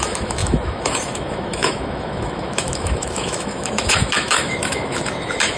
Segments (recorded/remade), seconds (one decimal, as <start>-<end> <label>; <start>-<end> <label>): 0.0-5.6 remade